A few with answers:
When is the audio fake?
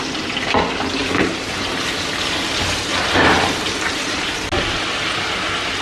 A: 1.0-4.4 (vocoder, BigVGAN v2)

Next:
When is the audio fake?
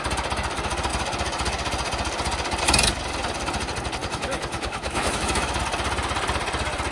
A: 4.0-5.6 (autoencoder, DAC-VAE)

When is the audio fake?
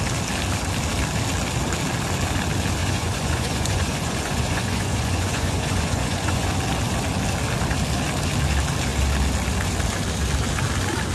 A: 2.8-6.5 (vocoder, Vocos)